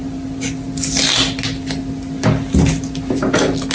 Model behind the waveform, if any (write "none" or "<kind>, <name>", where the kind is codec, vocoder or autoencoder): none